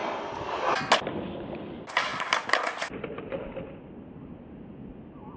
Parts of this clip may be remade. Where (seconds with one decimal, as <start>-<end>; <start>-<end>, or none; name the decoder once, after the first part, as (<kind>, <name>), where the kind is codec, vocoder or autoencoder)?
none